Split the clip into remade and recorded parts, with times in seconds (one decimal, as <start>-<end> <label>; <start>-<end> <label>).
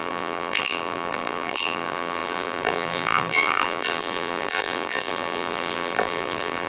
0.0-6.7 remade